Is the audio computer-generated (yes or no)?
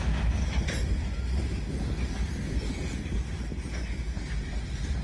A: no